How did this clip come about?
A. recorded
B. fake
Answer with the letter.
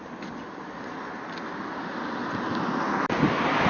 A